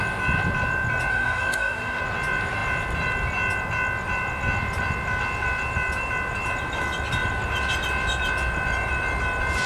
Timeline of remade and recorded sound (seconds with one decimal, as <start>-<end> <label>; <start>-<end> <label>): 0.0-1.1 recorded; 1.1-2.0 remade; 2.0-9.7 recorded